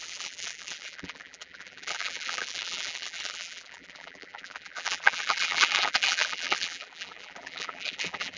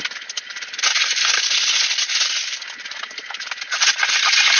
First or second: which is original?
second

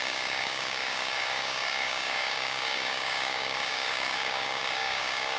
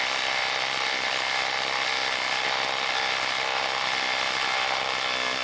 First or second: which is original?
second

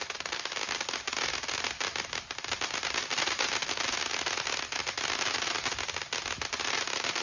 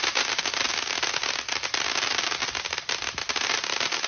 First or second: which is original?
first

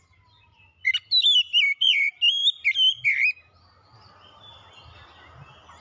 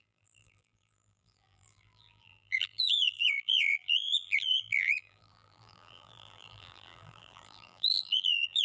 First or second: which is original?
first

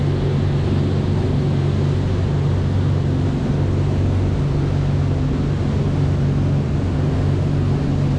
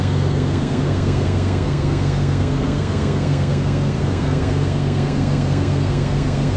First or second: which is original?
first